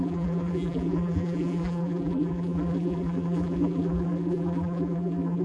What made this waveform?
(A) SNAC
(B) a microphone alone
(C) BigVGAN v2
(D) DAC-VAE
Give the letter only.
C